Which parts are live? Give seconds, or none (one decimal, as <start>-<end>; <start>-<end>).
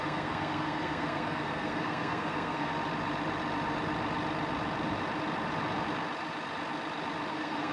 2.7-7.3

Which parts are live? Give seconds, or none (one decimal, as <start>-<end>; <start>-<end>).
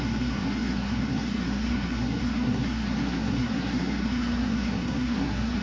none